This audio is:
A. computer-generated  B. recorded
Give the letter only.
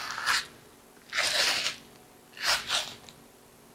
B